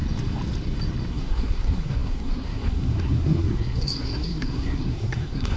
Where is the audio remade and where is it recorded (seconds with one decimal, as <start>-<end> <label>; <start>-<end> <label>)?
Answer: 0.0-1.1 recorded; 1.1-5.6 remade